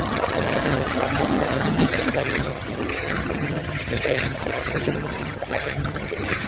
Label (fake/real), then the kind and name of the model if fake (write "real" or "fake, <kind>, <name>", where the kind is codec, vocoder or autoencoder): fake, vocoder, HiFi-GAN